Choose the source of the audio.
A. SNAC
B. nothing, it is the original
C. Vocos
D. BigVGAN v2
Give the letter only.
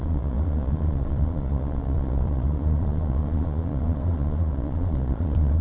C